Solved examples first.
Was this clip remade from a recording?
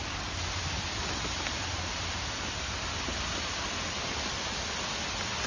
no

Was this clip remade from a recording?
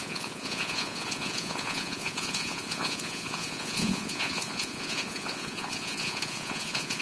yes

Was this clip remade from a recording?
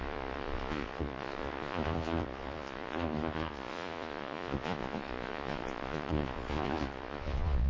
yes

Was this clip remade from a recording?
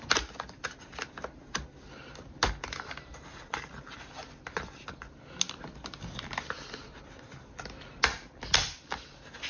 no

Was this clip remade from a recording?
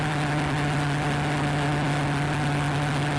no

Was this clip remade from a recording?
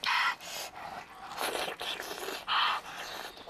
no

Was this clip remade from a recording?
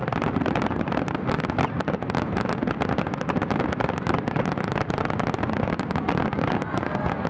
no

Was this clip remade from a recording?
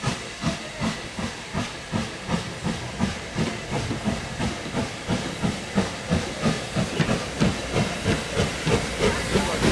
no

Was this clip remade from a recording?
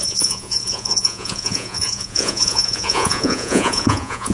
yes